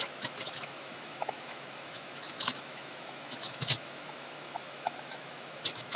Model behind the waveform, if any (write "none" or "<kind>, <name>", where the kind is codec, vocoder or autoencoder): autoencoder, DAC-VAE